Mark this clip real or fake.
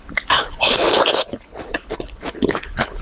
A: fake